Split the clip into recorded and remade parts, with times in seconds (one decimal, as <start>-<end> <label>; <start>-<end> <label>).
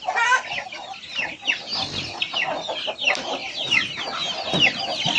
0.0-5.2 recorded